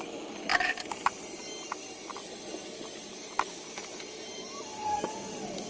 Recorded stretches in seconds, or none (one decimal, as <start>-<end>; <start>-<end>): 0.0-5.7